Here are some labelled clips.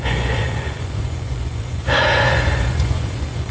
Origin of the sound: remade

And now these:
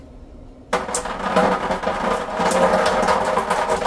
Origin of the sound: recorded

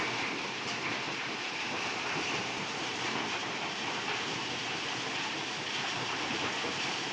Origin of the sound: remade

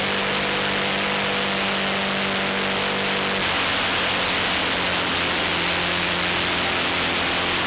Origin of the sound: recorded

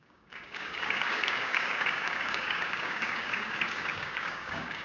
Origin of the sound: remade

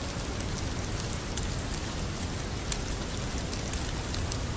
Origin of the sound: recorded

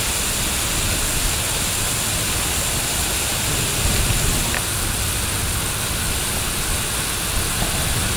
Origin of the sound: recorded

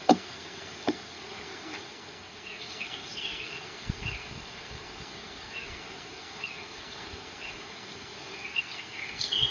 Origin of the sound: remade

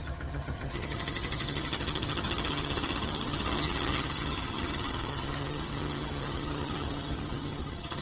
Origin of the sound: remade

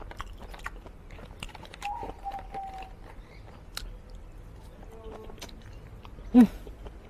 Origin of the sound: recorded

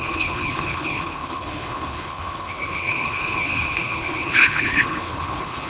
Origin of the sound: remade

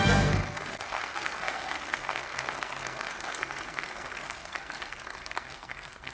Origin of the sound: remade